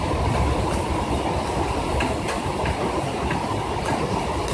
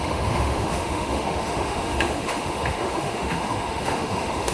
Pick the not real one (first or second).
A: second